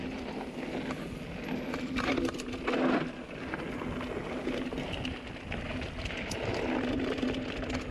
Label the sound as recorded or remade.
recorded